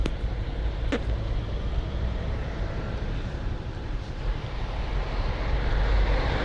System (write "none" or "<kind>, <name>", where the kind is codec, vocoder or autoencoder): vocoder, BigVGAN v2